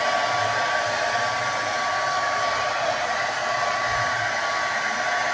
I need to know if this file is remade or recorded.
recorded